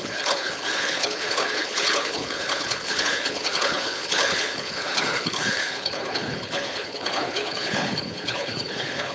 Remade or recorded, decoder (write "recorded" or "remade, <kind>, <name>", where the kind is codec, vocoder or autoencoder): remade, codec, HILCodec